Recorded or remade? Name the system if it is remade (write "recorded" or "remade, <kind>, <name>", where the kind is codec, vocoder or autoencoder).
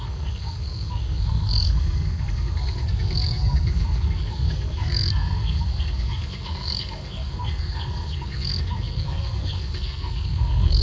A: remade, codec, SNAC